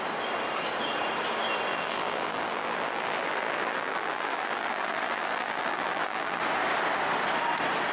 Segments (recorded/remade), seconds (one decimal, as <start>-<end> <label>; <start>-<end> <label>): 0.0-1.7 recorded; 1.7-6.4 remade; 6.4-7.9 recorded